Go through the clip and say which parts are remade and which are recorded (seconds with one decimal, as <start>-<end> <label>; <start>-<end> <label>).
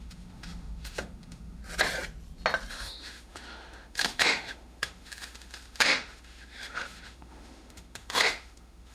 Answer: 0.0-1.6 remade; 1.6-2.7 recorded; 2.7-8.9 remade